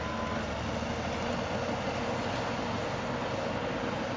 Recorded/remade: recorded